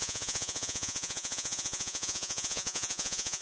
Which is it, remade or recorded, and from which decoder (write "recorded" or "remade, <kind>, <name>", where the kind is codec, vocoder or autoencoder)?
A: remade, vocoder, Vocos